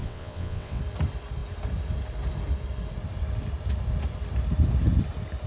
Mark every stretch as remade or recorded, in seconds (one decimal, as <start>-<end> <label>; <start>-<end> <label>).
0.0-0.8 remade; 0.8-5.5 recorded